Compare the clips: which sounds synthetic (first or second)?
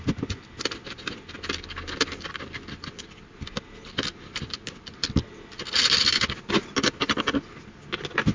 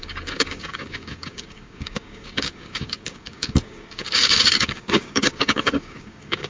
second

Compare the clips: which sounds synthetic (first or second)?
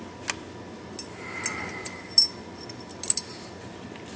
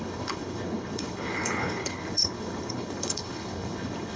second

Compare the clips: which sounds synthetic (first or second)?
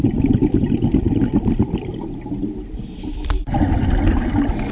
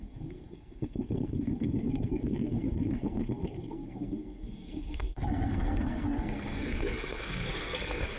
second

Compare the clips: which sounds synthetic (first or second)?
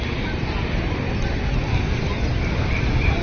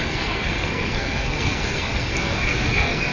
second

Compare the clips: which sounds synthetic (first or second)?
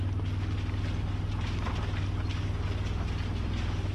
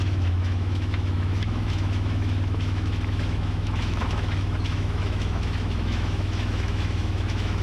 second